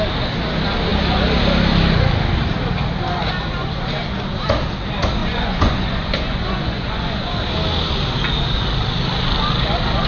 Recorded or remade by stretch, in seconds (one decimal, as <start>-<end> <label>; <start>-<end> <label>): 0.0-5.2 recorded; 5.2-7.3 remade; 7.3-10.1 recorded